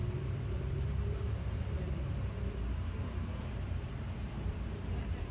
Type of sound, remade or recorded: remade